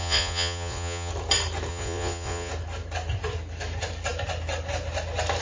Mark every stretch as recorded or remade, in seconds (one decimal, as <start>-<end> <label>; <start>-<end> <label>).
0.0-1.1 remade; 1.1-1.7 recorded; 1.7-2.5 remade; 2.5-5.4 recorded